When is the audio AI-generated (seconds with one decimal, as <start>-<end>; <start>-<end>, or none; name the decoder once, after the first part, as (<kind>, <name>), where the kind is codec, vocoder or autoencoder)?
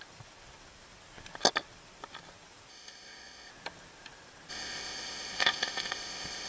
2.7-3.5 (codec, ZipCodec); 4.5-6.5